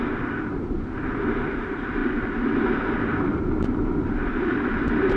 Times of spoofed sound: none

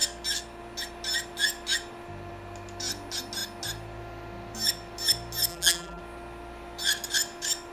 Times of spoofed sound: 5.5-6.0 (vocoder, BigVGAN v2)

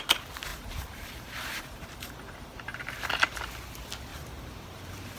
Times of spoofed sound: 0.5-2.9 (vocoder, BigVGAN v2); 4.1-5.2

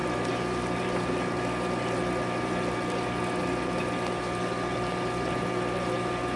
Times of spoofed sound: none

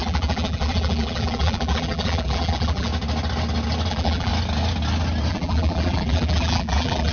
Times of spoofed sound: 0.0-2.9 (vocoder, BigVGAN v2); 3.9-4.3; 5.3-7.1